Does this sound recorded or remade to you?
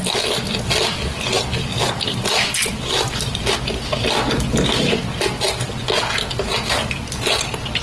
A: recorded